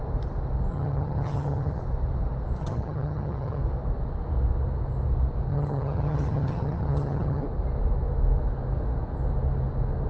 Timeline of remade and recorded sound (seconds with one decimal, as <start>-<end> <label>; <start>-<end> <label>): 0.0-0.7 recorded; 0.7-1.8 remade; 1.8-2.6 recorded; 2.6-3.6 remade; 3.6-5.5 recorded; 5.5-7.4 remade; 7.4-10.1 recorded